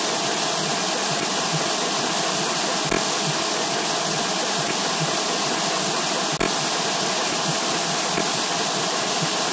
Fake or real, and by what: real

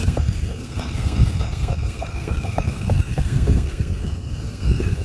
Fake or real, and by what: fake, codec, SNAC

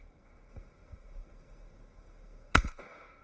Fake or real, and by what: fake, codec, SNAC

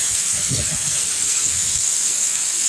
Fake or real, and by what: fake, codec, SNAC